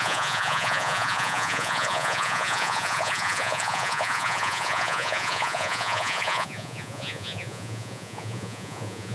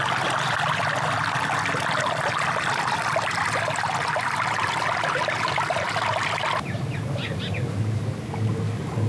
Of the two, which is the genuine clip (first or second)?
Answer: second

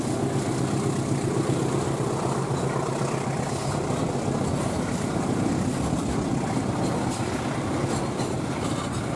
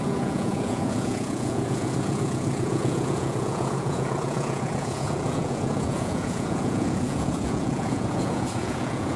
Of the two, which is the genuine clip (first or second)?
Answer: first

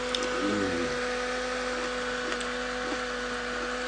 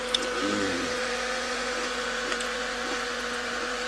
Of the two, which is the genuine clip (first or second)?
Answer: first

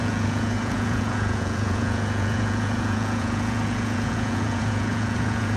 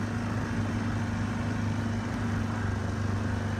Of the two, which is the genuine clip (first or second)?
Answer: second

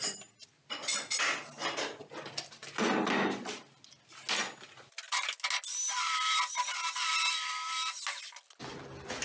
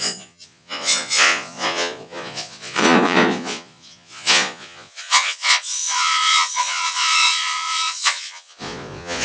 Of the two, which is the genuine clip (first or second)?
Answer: first